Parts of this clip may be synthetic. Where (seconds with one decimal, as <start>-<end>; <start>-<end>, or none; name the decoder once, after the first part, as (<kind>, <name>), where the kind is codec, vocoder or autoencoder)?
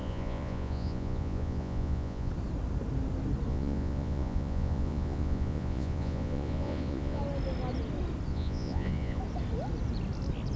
0.0-2.3 (vocoder, Vocos); 3.5-7.2; 8.3-9.2